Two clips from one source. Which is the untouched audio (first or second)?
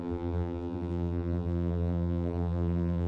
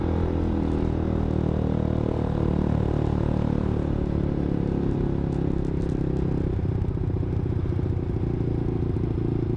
second